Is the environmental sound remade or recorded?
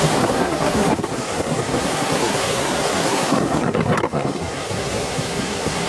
remade